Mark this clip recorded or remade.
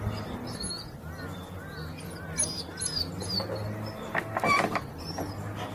recorded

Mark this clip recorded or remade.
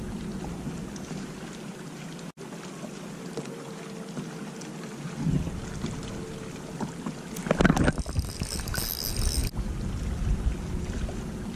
recorded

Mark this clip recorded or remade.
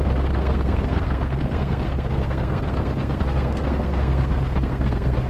remade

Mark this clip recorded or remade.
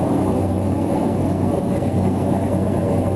remade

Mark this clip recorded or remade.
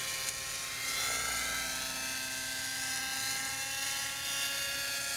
recorded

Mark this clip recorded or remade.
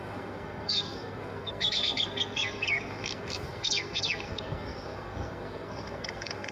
remade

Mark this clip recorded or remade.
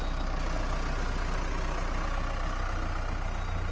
recorded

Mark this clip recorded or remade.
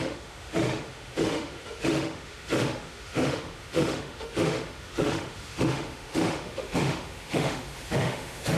remade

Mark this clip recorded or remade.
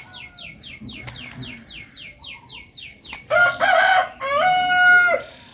recorded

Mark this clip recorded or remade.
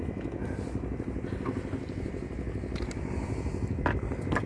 recorded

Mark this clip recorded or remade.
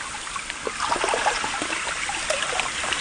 recorded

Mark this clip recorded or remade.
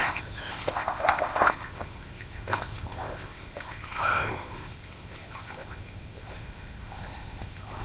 remade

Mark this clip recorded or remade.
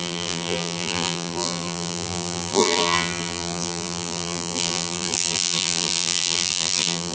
remade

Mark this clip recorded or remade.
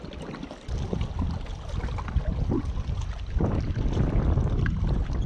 recorded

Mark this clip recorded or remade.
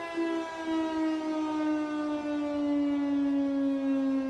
recorded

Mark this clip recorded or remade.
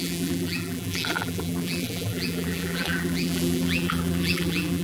remade